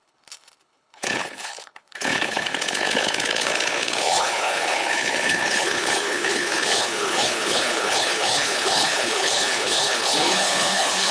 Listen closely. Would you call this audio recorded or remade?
remade